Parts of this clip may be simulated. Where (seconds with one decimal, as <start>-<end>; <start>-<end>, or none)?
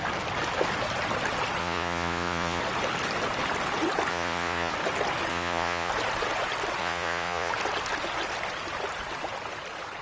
1.6-2.6; 4.1-4.7; 5.3-5.9; 6.8-7.5